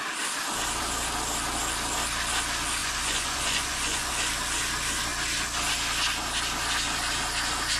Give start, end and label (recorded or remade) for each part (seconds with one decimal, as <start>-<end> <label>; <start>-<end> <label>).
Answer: 0.0-2.8 recorded; 2.8-4.1 remade; 4.1-7.8 recorded